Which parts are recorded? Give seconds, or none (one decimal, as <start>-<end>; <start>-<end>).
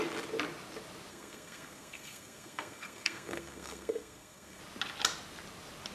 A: 0.0-1.1; 4.6-5.9